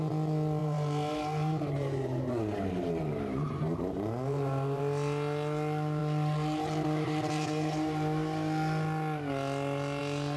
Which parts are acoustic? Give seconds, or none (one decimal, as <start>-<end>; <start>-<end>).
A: 0.0-0.6; 4.8-10.4